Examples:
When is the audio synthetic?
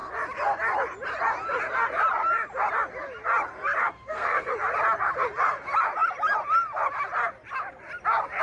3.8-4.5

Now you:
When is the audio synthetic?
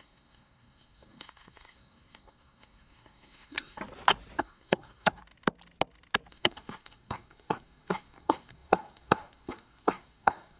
0.0-3.8; 4.4-5.2; 6.3-10.6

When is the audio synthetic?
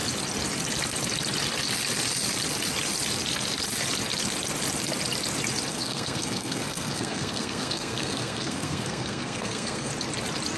5.7-9.9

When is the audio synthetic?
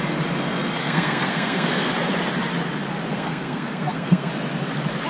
0.8-1.9; 3.1-4.3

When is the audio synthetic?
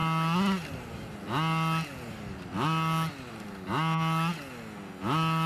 none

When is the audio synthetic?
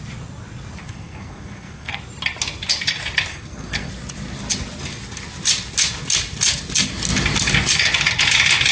0.8-2.0; 3.3-3.9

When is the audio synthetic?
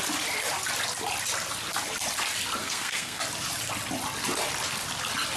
2.6-3.2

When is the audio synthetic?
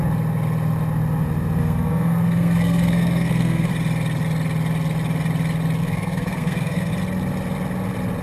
1.6-3.7; 5.8-6.9